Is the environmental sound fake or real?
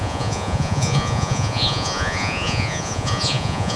fake